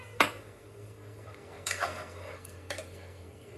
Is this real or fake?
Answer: fake